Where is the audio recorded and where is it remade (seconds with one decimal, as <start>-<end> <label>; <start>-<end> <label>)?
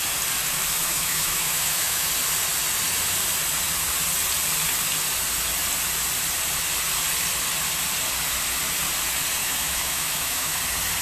0.0-0.8 recorded; 0.8-2.1 remade; 2.1-9.4 recorded; 9.4-10.6 remade; 10.6-11.0 recorded